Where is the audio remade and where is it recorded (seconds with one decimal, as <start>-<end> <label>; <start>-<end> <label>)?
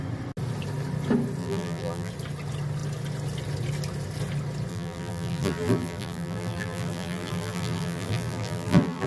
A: 0.0-1.4 recorded; 1.4-2.1 remade; 2.1-4.7 recorded; 4.7-9.1 remade